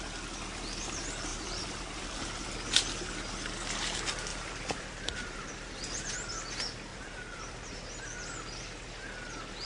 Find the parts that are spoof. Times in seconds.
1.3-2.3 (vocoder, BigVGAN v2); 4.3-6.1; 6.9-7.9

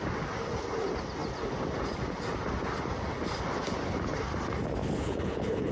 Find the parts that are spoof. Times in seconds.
4.8-5.7 (codec, HILCodec)